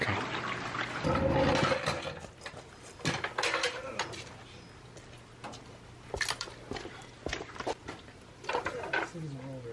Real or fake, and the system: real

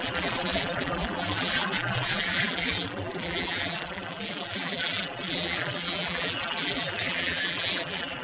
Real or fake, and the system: fake, vocoder, BigVGAN v2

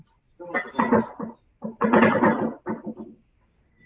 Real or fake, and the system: real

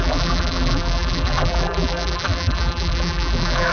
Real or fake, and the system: fake, vocoder, BigVGAN v2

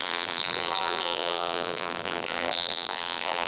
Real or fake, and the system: fake, vocoder, BigVGAN v2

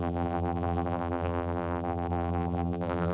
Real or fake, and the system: fake, vocoder, BigVGAN v2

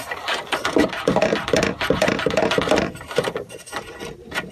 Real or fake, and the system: fake, vocoder, BigVGAN v2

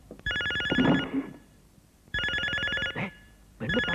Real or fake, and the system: fake, vocoder, BigVGAN v2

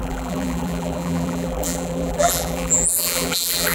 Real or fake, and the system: fake, vocoder, BigVGAN v2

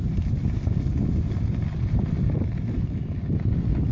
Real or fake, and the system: real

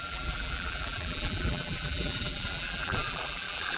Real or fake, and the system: fake, vocoder, BigVGAN v2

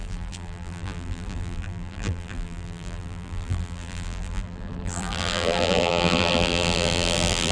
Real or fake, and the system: fake, vocoder, BigVGAN v2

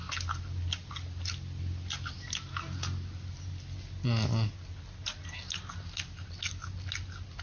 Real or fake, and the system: real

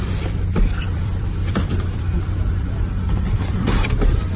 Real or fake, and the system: fake, vocoder, BigVGAN v2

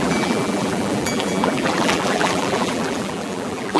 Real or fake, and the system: fake, vocoder, BigVGAN v2